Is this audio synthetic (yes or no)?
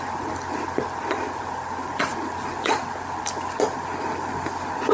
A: no